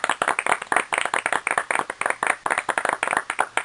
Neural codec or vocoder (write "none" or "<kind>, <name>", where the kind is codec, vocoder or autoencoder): none